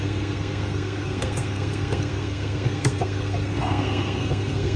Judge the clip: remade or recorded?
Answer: remade